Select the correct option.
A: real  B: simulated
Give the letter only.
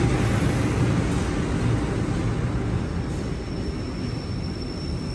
A